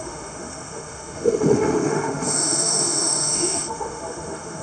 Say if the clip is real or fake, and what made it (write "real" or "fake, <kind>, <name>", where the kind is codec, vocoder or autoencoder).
fake, autoencoder, DAC-VAE